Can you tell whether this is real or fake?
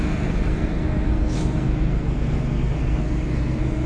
fake